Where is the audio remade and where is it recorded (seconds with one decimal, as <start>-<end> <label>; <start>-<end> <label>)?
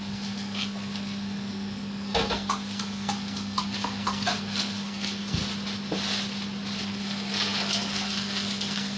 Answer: 0.0-5.4 remade; 5.4-6.8 recorded; 6.8-9.0 remade